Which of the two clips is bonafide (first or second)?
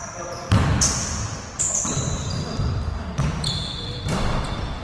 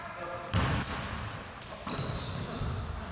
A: second